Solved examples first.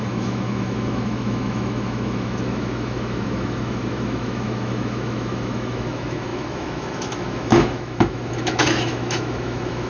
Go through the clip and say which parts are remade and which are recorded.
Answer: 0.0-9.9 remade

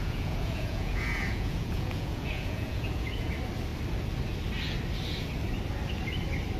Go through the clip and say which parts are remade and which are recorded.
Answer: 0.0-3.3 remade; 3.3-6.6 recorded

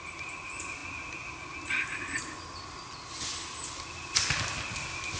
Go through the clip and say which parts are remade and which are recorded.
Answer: 0.0-5.2 recorded